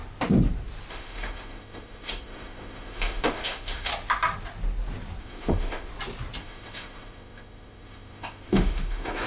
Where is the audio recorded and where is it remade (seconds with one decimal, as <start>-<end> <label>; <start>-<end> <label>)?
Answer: 0.0-0.9 recorded; 0.9-3.9 remade; 3.9-5.2 recorded; 5.2-5.9 remade; 5.9-6.4 recorded; 6.4-9.3 remade